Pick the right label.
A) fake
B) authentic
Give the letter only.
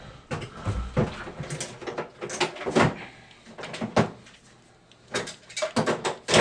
B